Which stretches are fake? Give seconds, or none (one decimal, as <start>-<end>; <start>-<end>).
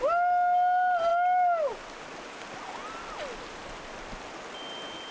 none